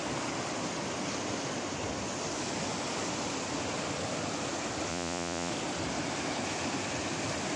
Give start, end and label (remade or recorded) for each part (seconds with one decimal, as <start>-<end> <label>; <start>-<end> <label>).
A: 0.0-4.9 recorded; 4.9-5.5 remade; 5.5-7.6 recorded